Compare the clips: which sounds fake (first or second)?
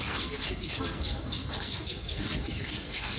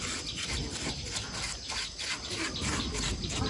first